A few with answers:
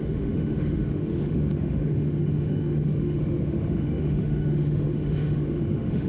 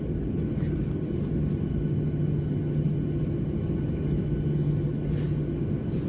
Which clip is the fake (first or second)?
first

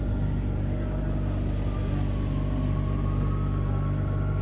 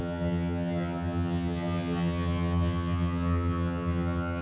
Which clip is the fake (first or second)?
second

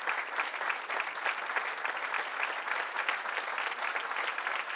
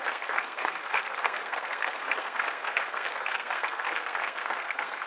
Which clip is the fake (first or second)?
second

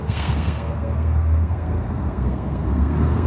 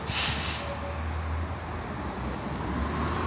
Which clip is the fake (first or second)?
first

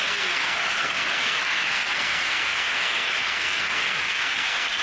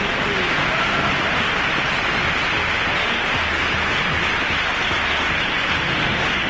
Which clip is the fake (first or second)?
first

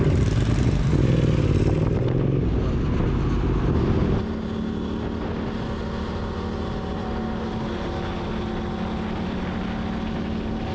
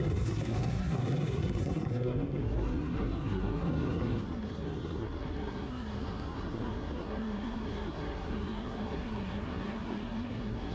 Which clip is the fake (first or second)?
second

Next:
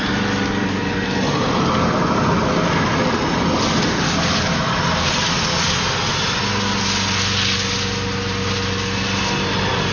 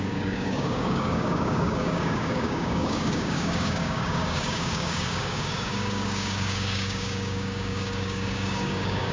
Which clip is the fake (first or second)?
second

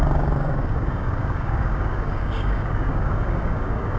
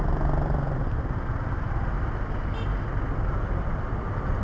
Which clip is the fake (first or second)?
first